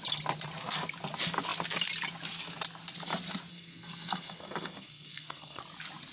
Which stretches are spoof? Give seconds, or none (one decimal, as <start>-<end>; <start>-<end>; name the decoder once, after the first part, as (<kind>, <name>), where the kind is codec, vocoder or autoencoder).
3.5-5.6 (codec, SNAC)